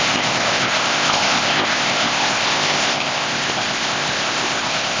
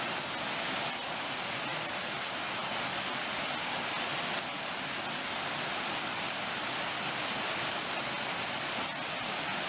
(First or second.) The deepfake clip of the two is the first